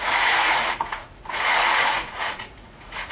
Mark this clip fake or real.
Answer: fake